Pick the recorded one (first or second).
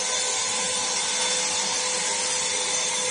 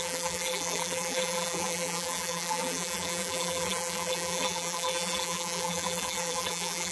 first